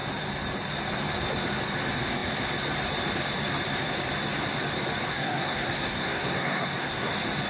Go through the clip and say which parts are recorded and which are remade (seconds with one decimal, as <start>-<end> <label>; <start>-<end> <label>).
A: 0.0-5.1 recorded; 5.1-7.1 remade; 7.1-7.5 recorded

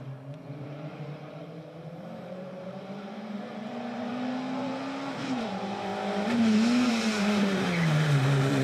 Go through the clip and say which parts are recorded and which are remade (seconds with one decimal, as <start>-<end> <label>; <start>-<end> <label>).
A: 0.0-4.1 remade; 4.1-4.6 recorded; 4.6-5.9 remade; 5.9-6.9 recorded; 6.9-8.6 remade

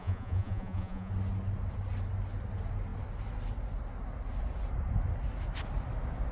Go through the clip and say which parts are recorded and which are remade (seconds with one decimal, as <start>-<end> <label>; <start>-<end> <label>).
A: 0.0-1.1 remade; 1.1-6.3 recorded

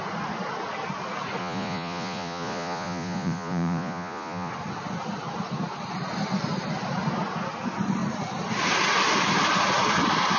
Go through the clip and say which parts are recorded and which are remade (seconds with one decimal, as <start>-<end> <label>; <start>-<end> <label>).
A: 0.0-1.4 recorded; 1.4-4.5 remade; 4.5-10.4 recorded

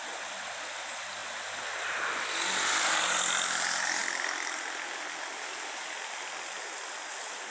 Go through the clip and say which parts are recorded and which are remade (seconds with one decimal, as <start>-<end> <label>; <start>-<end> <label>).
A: 0.0-7.5 recorded